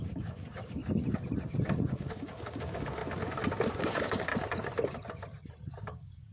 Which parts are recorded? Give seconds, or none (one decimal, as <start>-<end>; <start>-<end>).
0.8-1.9; 3.0-3.7; 4.3-5.8